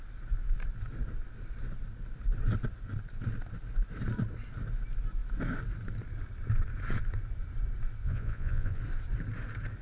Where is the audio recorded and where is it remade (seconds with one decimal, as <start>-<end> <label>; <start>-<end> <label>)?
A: 0.0-8.0 recorded; 8.0-8.8 remade; 8.8-9.8 recorded